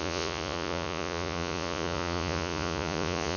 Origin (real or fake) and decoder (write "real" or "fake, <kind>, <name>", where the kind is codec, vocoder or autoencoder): fake, vocoder, Vocos